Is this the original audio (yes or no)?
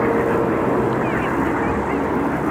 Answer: yes